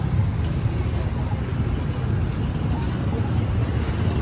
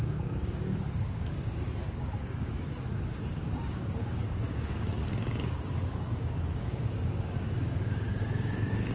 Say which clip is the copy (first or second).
second